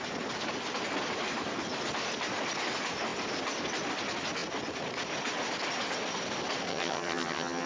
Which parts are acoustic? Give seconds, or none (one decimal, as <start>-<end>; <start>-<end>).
0.0-6.7